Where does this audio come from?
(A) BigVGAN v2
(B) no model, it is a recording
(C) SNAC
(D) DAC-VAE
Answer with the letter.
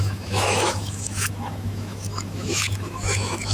D